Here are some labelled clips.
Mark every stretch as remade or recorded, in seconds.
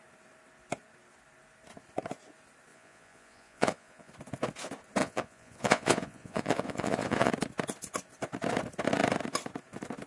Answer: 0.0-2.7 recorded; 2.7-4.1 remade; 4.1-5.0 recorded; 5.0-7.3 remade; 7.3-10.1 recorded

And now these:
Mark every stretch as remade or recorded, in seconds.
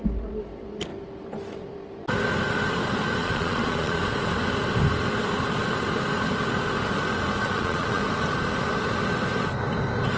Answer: 0.0-3.2 recorded; 3.2-4.0 remade; 4.0-7.4 recorded; 7.4-8.0 remade; 8.0-10.2 recorded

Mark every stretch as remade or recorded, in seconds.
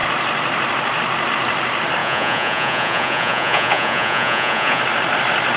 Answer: 0.0-2.0 recorded; 2.0-4.8 remade; 4.8-5.6 recorded